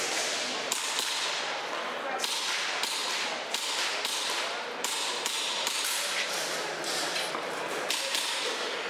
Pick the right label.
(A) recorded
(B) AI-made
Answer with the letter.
A